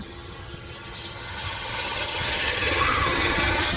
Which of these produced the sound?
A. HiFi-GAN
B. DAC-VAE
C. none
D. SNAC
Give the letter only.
A